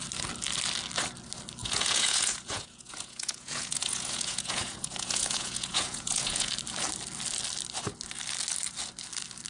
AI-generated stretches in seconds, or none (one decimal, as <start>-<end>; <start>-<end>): 1.6-6.5